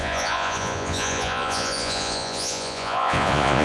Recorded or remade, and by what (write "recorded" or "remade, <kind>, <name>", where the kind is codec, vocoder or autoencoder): remade, vocoder, Vocos